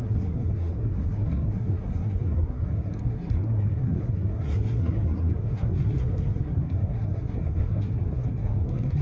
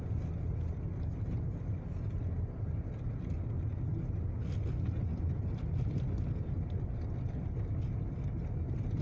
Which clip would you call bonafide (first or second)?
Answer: second